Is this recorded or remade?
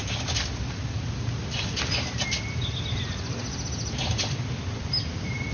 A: remade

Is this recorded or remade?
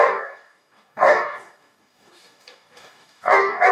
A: remade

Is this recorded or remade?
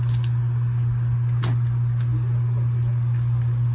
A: recorded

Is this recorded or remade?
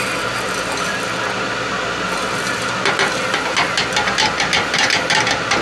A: recorded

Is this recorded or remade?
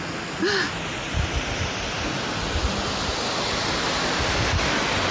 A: recorded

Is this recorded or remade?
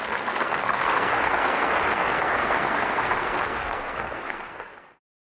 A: remade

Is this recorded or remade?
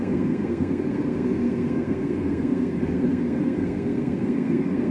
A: remade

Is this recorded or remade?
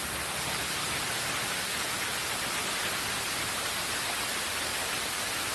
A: recorded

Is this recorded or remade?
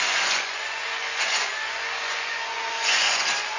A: remade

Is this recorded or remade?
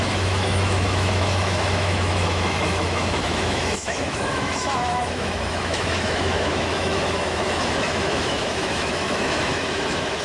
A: remade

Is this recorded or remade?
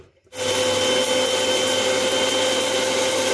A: recorded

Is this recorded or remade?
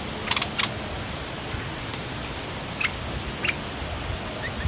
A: recorded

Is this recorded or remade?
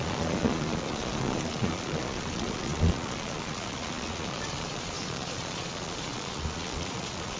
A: remade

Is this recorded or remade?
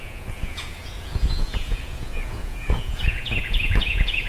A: remade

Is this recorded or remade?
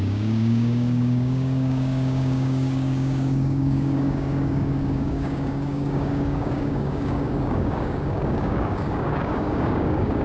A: remade